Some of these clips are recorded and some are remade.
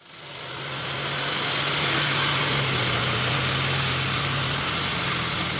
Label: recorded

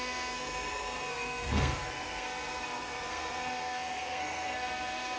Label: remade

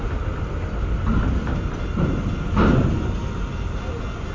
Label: recorded